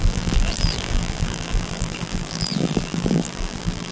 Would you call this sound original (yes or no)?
no